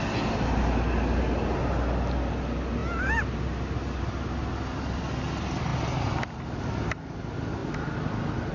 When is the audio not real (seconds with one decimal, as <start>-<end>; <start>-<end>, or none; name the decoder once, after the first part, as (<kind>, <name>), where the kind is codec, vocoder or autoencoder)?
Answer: none